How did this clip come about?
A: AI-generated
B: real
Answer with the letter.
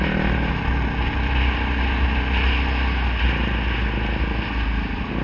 B